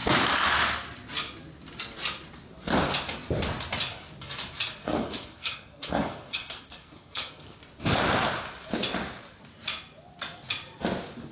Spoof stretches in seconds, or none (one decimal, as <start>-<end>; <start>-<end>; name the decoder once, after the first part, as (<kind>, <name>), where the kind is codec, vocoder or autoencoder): 4.8-7.6 (codec, SNAC)